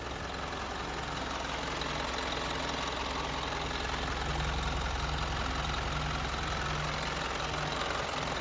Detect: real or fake real